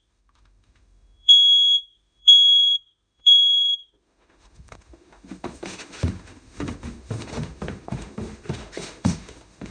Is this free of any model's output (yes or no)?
no